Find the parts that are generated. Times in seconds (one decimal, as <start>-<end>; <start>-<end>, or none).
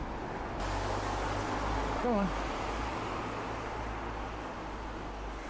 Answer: 2.0-3.2